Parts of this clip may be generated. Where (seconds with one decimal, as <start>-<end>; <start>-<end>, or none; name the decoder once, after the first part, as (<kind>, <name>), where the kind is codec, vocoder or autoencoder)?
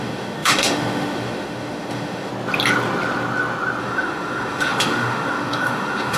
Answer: 0.0-2.3 (autoencoder, DAC-VAE); 3.8-6.2